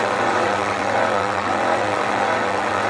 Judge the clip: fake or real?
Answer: fake